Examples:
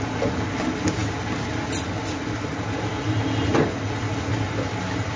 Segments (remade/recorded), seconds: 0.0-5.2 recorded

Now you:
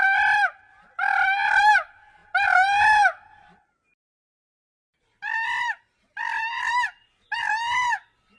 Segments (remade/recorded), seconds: 0.0-8.4 recorded

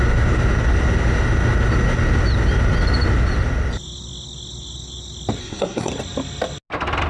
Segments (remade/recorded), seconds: 0.0-5.4 recorded; 5.4-5.9 remade; 5.9-7.1 recorded

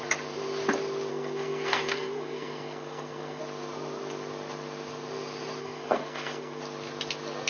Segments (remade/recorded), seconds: 0.0-1.1 recorded; 1.1-3.4 remade; 3.4-5.6 recorded; 5.6-6.6 remade; 6.6-7.5 recorded

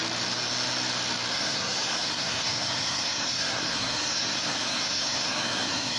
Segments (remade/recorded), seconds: 0.0-1.3 recorded; 1.3-6.0 remade

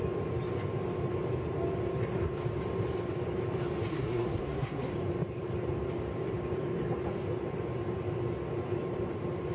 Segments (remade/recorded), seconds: 0.0-3.9 recorded; 3.9-4.9 remade; 4.9-9.5 recorded